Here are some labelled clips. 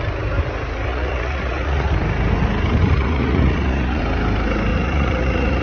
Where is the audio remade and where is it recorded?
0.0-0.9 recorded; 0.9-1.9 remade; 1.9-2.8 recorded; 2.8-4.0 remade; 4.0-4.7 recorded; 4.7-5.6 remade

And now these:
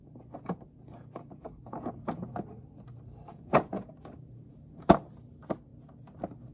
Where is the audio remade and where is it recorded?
0.0-2.3 remade; 2.3-3.3 recorded; 3.3-4.9 remade; 4.9-6.5 recorded

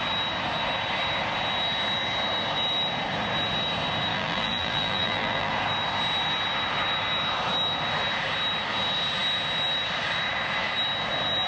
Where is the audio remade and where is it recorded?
0.0-4.1 recorded; 4.1-5.5 remade; 5.5-11.5 recorded

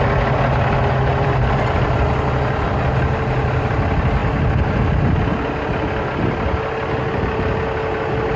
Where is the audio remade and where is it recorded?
0.0-8.4 recorded

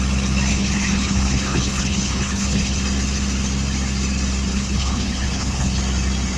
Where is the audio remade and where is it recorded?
0.0-0.5 recorded; 0.5-2.8 remade; 2.8-4.5 recorded; 4.5-5.8 remade; 5.8-6.4 recorded

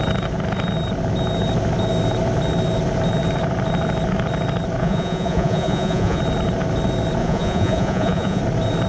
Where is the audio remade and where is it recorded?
0.0-4.8 recorded; 4.8-6.2 remade; 6.2-7.2 recorded; 7.2-8.4 remade; 8.4-8.9 recorded

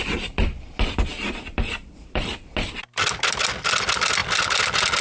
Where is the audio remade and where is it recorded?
0.0-5.0 recorded